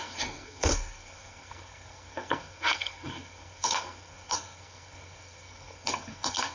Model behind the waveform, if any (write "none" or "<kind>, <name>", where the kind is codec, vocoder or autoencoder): codec, SNAC